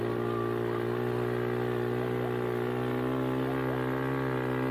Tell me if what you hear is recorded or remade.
recorded